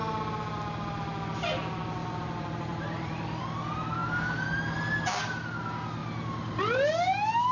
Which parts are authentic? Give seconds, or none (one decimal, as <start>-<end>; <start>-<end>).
0.0-2.0; 3.4-7.5